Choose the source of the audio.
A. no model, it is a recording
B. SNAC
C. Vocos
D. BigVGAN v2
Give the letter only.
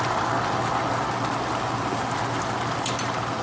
A